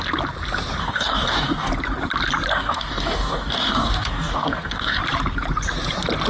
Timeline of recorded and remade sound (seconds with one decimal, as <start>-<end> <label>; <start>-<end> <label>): 0.0-0.8 recorded; 0.8-1.7 remade; 1.7-2.5 recorded; 2.5-5.0 remade; 5.0-6.3 recorded